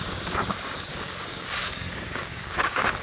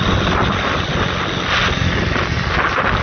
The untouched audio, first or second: second